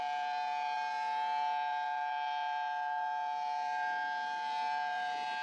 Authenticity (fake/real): real